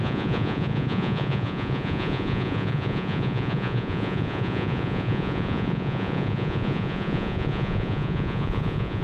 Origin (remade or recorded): remade